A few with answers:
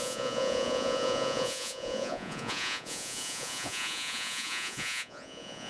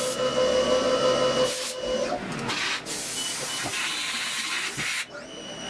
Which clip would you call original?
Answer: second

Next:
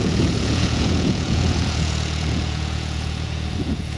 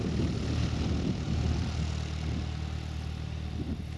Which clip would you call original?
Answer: second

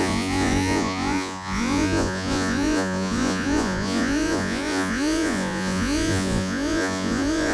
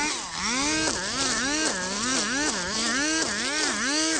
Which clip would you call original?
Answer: second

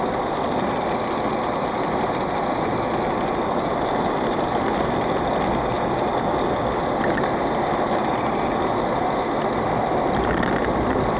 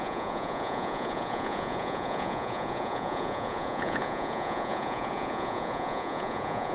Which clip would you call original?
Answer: first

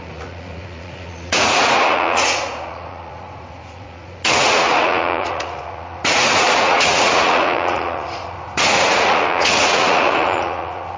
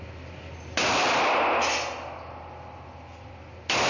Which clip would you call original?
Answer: second